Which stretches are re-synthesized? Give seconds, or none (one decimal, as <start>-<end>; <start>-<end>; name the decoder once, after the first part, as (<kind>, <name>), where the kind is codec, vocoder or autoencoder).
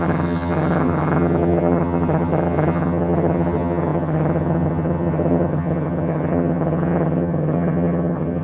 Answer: 0.0-8.4 (vocoder, HiFi-GAN)